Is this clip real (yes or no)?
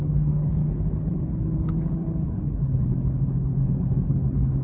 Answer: no